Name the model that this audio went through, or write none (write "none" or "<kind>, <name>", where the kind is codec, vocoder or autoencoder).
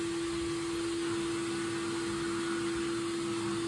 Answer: none